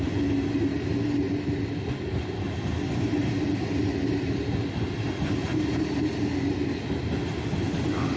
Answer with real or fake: real